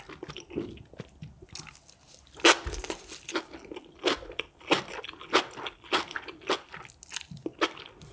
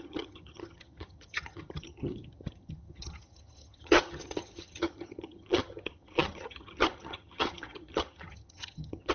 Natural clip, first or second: first